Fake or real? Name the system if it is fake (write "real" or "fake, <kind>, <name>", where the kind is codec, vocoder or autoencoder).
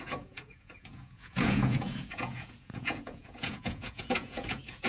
fake, vocoder, Vocos